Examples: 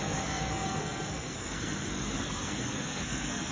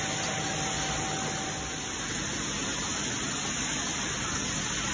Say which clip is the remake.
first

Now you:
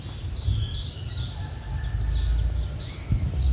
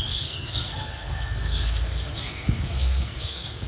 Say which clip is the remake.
second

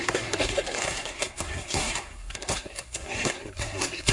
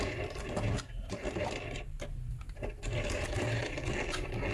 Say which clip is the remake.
first